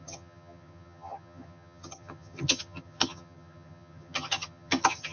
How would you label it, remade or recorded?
remade